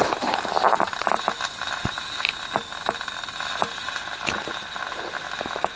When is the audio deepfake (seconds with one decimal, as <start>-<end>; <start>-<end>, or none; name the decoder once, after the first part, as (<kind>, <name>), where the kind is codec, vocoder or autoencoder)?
none